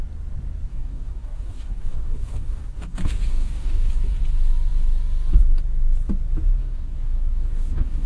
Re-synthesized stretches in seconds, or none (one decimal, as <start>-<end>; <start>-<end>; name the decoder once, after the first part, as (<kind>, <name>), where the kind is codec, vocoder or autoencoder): 0.7-3.9 (codec, DAC); 6.6-8.1